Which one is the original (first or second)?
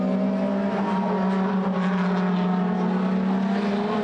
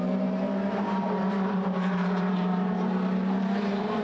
first